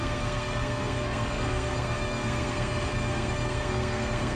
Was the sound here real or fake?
fake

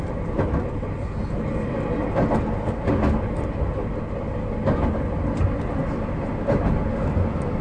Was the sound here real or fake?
real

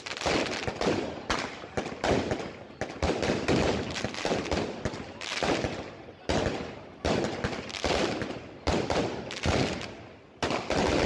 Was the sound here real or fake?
real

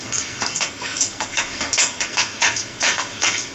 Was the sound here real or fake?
fake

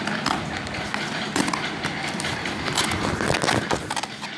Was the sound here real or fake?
real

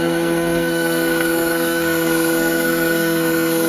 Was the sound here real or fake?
fake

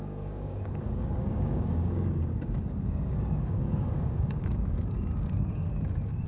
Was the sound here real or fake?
fake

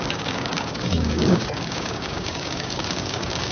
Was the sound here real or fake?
fake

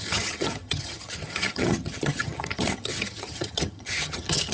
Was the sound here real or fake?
fake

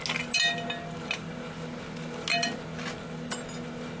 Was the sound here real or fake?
real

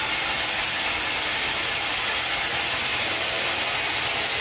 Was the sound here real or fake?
real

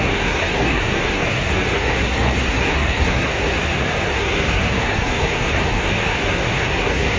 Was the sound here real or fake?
fake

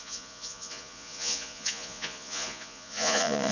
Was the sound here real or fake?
fake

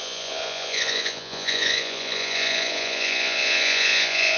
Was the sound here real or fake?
fake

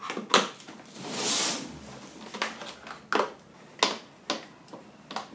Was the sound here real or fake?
real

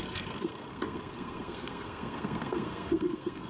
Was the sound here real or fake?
fake